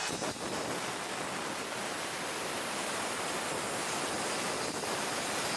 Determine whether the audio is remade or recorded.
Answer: recorded